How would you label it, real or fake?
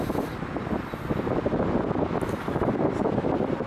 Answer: real